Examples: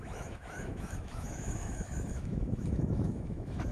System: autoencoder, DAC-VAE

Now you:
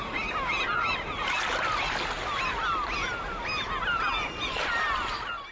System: none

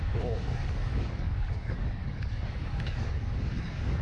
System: codec, DAC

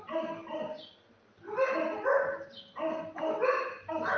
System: none